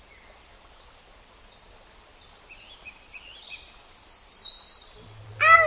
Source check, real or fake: real